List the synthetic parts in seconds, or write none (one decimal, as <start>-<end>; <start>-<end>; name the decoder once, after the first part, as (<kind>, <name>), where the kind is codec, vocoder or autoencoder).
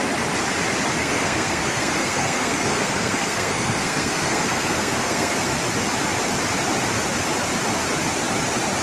1.0-5.5 (codec, SNAC)